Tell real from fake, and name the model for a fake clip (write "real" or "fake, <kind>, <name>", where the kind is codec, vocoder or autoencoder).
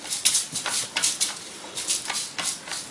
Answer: real